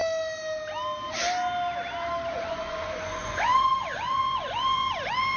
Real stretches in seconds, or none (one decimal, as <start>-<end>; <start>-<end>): 0.0-2.3